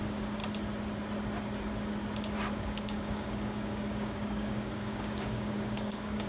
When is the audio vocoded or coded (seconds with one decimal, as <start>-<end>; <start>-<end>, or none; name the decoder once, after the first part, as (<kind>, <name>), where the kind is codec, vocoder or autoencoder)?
0.0-0.4 (codec, DAC); 2.5-6.3